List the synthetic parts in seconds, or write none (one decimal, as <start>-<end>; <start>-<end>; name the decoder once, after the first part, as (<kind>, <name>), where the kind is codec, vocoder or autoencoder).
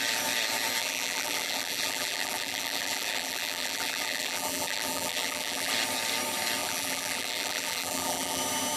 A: 0.8-5.7 (vocoder, BigVGAN v2); 6.6-8.4